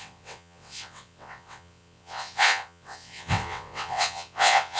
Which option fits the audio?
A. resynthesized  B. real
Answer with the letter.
A